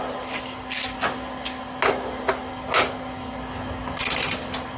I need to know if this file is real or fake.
real